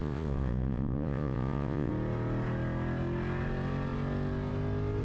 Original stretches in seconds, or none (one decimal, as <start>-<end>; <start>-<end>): 1.9-5.0